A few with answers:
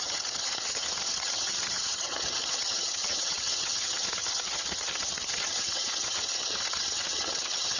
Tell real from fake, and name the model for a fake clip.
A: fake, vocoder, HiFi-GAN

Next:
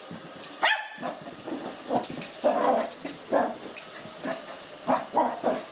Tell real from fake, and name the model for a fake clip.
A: real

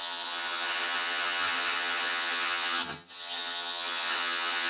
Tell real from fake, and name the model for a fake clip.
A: fake, vocoder, HiFi-GAN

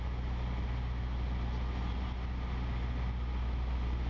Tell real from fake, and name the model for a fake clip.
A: real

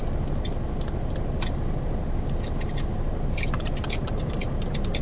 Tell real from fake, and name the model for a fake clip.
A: real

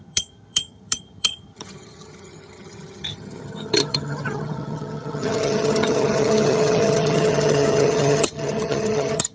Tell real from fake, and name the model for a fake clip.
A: fake, vocoder, HiFi-GAN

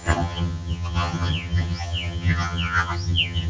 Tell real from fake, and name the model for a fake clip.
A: fake, vocoder, HiFi-GAN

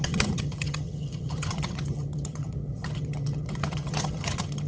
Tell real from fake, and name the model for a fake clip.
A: fake, vocoder, HiFi-GAN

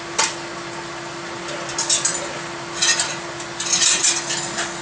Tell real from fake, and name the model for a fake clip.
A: real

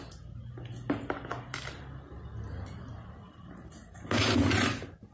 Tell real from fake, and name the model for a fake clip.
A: real